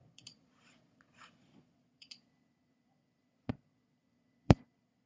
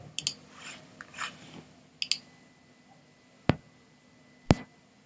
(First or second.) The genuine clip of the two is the second